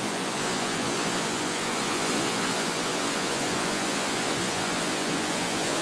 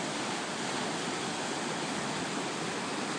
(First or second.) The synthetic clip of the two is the first